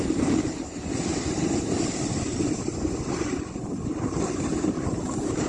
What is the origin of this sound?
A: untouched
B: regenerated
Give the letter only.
B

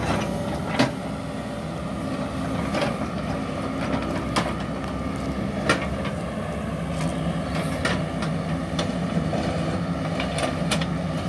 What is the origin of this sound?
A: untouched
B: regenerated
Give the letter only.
A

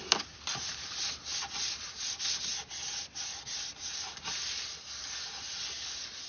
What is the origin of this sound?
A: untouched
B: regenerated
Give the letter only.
A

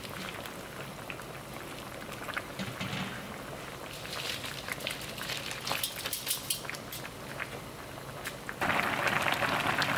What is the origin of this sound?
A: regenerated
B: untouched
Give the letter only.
B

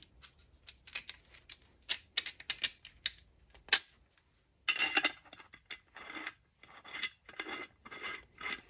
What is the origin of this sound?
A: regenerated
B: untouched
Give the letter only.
B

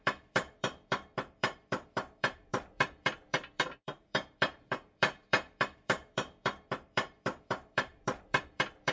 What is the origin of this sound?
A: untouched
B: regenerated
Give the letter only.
B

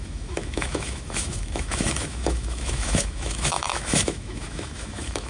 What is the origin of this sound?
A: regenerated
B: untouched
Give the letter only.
A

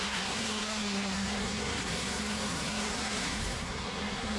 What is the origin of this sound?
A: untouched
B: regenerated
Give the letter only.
B